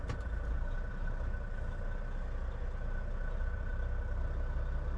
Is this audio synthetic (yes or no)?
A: no